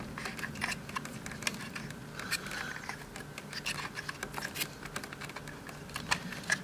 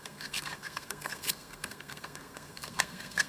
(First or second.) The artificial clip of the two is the second